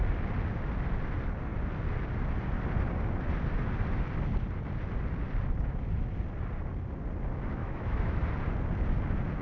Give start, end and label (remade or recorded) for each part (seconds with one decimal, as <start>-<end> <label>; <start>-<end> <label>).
0.0-7.6 recorded; 7.6-8.2 remade; 8.2-9.4 recorded